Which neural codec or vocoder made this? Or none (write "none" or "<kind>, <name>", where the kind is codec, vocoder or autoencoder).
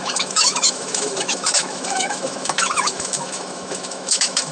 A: autoencoder, DAC-VAE